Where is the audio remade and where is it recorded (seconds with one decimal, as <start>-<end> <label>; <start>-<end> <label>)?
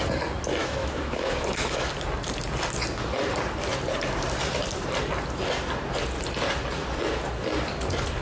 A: 0.0-0.6 recorded; 0.6-1.9 remade; 1.9-8.2 recorded